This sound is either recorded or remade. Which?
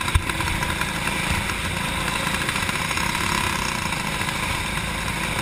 recorded